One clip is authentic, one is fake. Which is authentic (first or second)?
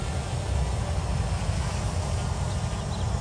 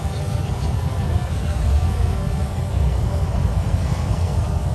first